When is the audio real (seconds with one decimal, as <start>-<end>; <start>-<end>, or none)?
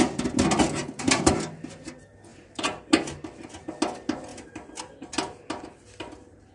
0.0-0.8; 1.3-2.3; 2.8-6.5